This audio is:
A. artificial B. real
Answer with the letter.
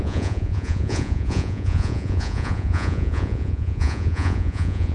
A